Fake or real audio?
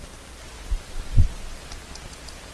real